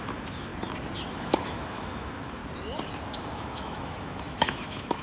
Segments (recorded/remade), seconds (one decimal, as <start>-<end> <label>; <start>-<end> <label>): 0.0-0.5 remade; 0.5-1.1 recorded; 1.1-2.4 remade; 2.4-3.2 recorded; 3.2-5.0 remade